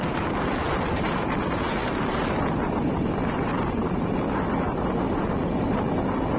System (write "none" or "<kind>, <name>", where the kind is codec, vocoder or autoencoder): none